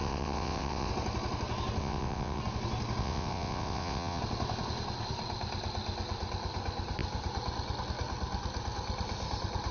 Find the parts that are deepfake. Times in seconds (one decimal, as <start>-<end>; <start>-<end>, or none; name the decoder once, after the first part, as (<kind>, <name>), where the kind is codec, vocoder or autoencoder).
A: 0.0-0.9 (vocoder, WaveNeXt); 1.8-2.4; 3.0-4.2